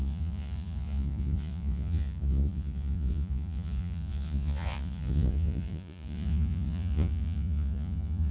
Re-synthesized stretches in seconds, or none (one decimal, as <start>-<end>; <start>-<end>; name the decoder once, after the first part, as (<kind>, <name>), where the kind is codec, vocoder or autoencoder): 0.0-8.3 (vocoder, Vocos)